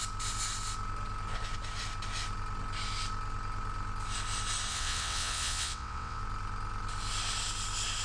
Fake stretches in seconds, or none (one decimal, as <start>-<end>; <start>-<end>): 4.7-6.2